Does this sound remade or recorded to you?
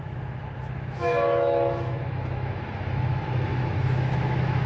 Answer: remade